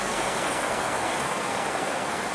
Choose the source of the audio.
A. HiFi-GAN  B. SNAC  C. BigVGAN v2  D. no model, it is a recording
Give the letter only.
B